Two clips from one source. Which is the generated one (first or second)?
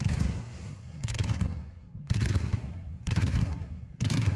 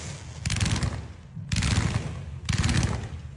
first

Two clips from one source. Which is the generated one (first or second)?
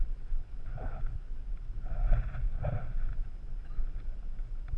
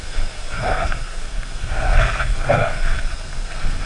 second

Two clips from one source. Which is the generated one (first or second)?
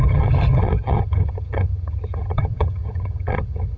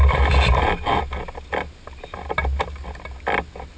first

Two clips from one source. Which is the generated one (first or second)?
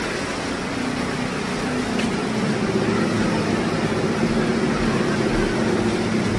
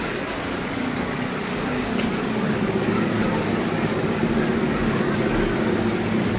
second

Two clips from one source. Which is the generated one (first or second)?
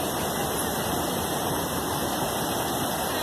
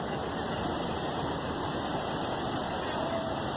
first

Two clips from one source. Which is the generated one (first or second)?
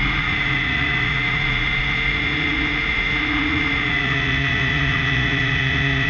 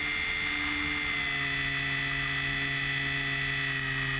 first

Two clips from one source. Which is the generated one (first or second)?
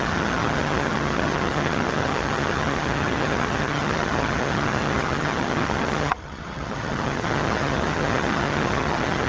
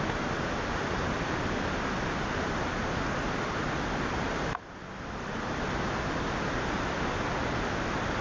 first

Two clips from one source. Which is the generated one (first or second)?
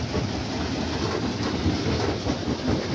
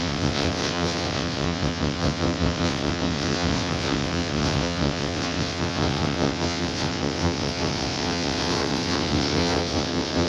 second